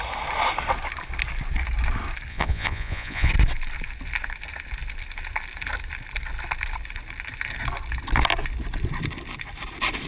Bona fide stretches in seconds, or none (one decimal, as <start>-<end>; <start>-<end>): 0.0-2.3; 3.3-10.1